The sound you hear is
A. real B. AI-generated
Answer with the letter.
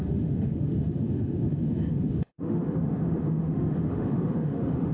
B